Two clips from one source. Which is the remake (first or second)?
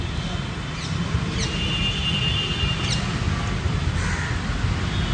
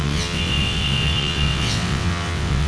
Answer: second